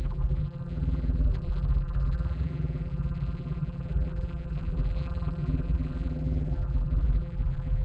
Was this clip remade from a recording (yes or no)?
yes